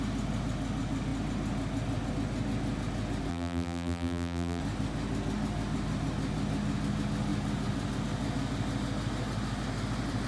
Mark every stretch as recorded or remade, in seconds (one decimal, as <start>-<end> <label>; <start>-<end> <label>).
0.0-3.3 recorded; 3.3-4.6 remade; 4.6-10.3 recorded